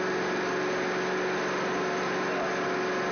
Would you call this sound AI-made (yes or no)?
no